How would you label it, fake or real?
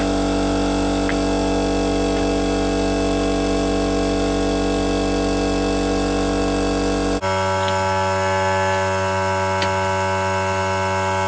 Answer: real